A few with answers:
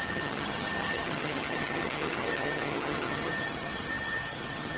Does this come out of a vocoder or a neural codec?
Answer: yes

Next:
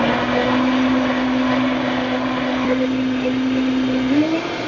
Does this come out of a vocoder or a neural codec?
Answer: no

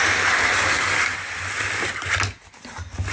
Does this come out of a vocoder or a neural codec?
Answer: no